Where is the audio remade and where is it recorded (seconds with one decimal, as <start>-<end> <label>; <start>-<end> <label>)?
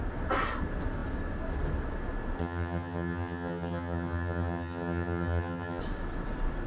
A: 0.0-2.4 recorded; 2.4-5.8 remade; 5.8-6.7 recorded